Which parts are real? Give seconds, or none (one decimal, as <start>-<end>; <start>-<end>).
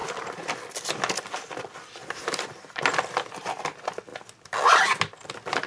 0.0-2.0; 2.8-5.7